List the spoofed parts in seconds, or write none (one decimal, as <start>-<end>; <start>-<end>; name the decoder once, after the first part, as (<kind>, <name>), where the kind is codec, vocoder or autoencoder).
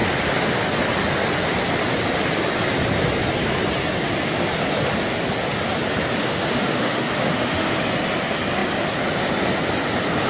6.2-7.8 (autoencoder, DAC-VAE)